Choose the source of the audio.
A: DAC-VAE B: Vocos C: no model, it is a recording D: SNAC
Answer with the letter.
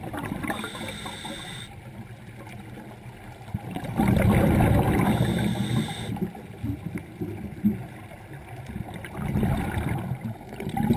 C